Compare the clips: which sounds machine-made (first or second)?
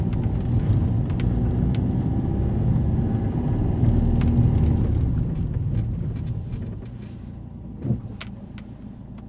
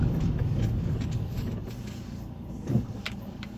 second